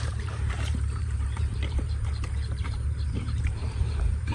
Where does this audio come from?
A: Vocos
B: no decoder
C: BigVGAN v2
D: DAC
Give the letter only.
C